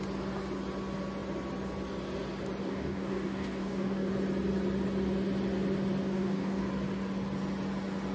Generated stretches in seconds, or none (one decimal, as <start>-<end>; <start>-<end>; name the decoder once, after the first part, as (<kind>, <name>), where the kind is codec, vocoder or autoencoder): 2.6-4.1 (codec, DAC); 6.0-6.6